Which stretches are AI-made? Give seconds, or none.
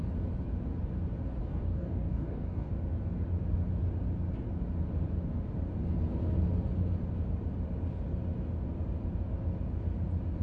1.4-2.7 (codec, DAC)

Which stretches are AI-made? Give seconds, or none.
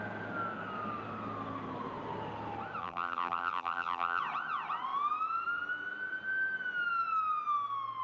2.8-4.2 (vocoder, BigVGAN v2)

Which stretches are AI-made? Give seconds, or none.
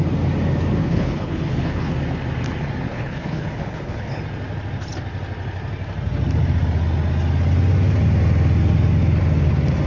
0.8-1.9 (codec, HILCodec); 2.9-4.2